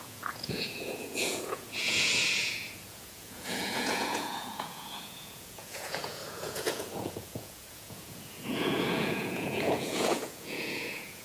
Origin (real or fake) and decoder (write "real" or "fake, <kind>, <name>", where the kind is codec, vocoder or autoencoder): fake, vocoder, Vocos